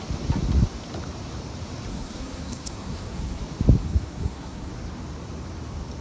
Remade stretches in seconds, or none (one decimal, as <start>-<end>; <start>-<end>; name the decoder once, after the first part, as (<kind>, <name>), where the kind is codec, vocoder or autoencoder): 1.9-3.4 (codec, SNAC); 3.8-4.7